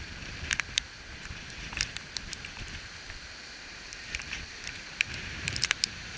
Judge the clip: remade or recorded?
remade